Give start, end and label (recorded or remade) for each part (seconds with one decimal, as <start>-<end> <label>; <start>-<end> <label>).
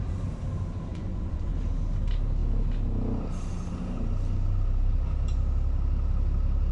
0.0-0.9 recorded; 0.9-1.5 remade; 1.5-6.7 recorded